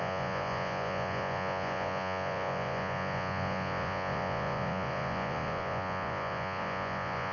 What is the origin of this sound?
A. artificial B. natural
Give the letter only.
A